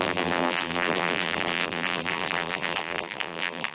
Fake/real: fake